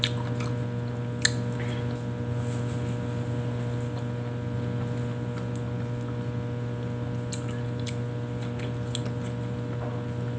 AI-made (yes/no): no